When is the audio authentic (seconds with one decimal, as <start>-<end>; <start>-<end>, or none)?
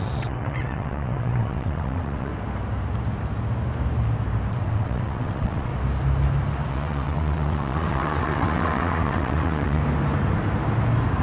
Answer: 2.3-4.5; 5.7-6.7; 9.8-11.2